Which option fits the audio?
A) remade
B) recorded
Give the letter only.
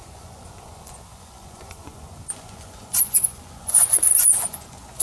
A